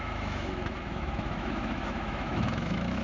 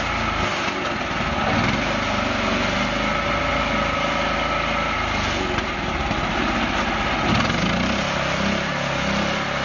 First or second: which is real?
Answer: second